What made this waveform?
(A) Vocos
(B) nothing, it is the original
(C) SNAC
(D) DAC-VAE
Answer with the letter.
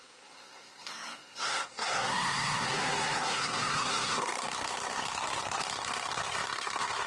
C